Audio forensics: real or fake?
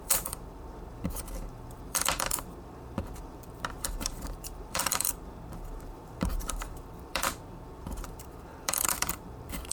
fake